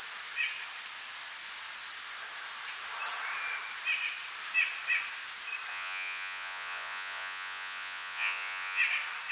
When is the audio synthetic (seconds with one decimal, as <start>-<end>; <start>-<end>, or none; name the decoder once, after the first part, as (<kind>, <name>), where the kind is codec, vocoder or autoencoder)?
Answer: 5.7-8.8 (vocoder, Vocos)